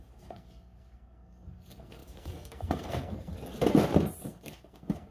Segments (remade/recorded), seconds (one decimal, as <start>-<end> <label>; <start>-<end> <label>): 0.0-3.3 remade; 3.3-4.2 recorded; 4.2-5.1 remade